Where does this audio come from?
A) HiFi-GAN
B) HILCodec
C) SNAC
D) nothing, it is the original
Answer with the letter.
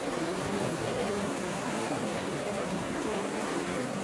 C